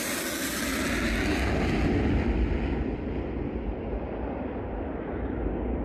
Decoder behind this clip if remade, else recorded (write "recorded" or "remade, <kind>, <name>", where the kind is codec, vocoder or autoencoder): recorded